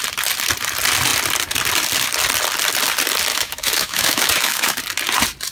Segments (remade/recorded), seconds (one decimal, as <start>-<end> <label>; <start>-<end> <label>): 0.0-3.3 recorded; 3.3-4.8 remade; 4.8-5.5 recorded